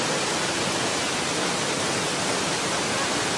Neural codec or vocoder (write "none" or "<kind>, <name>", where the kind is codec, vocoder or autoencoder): none